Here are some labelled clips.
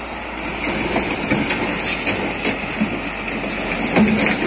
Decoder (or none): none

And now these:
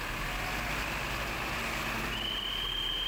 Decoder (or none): none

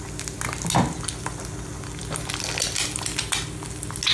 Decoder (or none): none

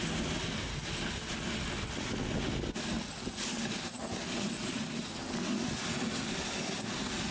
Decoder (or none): none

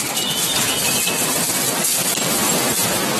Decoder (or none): none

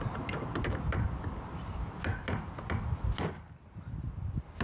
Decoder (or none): none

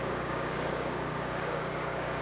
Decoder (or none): codec, DAC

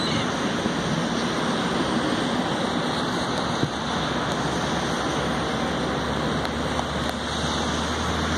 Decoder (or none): none